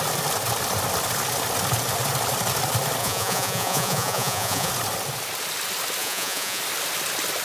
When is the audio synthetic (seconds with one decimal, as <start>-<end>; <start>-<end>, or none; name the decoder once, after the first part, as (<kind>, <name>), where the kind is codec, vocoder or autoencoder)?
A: 3.0-4.7 (vocoder, Vocos); 6.0-6.6